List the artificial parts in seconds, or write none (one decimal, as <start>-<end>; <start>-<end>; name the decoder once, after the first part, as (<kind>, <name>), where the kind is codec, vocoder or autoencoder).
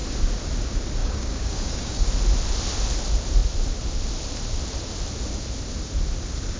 1.0-2.1 (codec, DAC)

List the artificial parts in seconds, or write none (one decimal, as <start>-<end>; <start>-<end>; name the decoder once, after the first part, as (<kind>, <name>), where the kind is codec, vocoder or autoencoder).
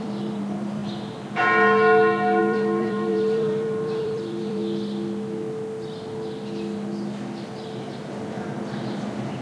0.0-0.8 (vocoder, BigVGAN v2); 2.4-4.6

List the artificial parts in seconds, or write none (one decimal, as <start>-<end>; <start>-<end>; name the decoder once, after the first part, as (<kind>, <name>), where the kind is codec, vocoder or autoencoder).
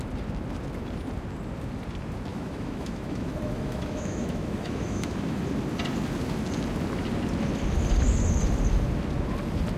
2.3-5.4 (autoencoder, DAC-VAE)